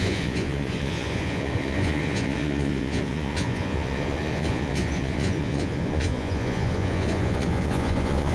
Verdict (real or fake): fake